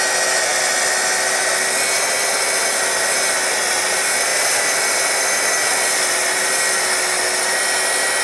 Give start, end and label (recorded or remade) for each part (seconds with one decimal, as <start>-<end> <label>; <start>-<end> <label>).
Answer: 0.0-8.2 recorded